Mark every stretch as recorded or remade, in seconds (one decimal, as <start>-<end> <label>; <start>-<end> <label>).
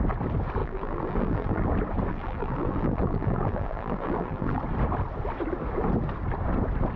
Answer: 0.0-0.6 recorded; 0.6-1.7 remade; 1.7-2.1 recorded; 2.1-4.6 remade; 4.6-7.0 recorded